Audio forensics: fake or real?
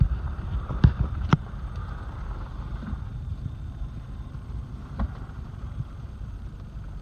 fake